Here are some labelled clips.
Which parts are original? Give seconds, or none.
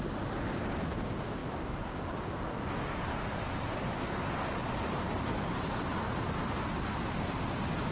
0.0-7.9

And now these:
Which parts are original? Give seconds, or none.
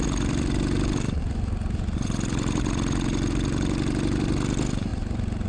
0.0-5.5